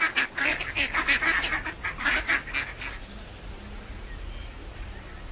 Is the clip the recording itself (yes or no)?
yes